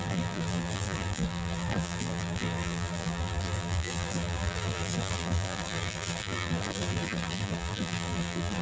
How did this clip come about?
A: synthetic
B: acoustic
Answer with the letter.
A